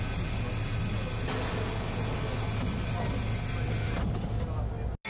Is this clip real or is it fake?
real